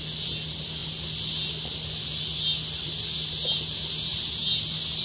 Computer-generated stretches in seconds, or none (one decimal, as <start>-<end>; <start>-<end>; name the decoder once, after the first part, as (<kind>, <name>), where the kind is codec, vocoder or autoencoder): none